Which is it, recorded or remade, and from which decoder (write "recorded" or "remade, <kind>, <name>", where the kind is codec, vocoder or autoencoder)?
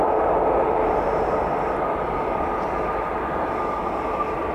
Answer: recorded